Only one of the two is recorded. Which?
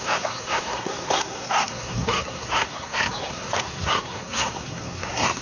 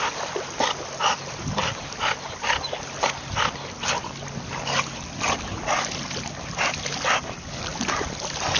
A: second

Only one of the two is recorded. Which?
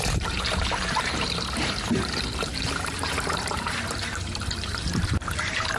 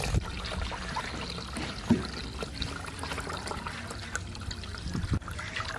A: second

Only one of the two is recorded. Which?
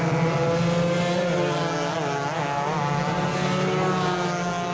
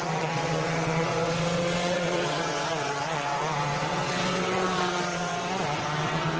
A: first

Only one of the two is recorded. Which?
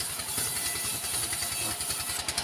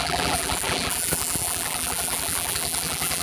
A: first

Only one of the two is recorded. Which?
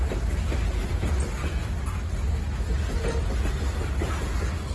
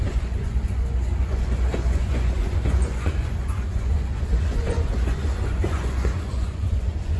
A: first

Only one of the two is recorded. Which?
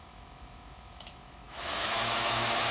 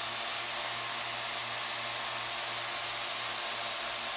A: second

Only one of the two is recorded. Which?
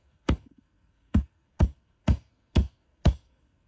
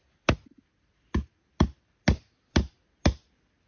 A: second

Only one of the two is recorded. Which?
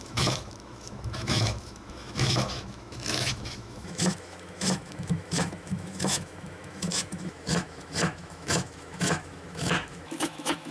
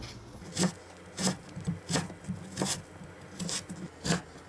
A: second